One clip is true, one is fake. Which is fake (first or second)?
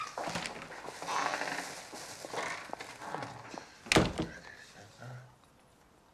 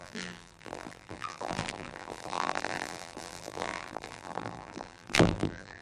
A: second